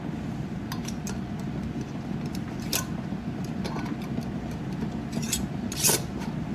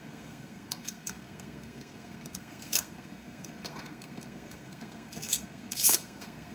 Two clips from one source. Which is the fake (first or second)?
second